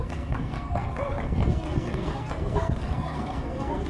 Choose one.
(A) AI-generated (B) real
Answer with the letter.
A